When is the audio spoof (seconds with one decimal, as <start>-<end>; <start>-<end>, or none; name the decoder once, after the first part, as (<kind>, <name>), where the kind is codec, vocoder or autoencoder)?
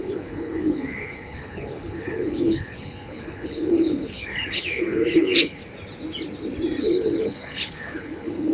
0.0-5.6 (codec, HILCodec); 6.8-8.5